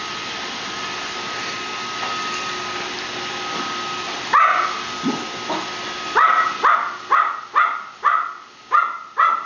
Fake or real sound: real